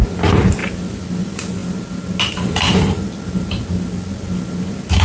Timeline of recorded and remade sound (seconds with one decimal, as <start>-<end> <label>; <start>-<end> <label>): 0.0-0.6 recorded; 0.6-1.1 remade; 1.1-5.0 recorded